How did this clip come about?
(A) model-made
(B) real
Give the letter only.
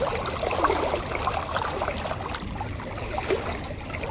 B